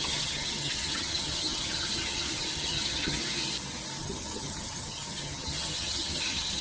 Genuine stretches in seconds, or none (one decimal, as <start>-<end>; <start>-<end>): 3.2-4.0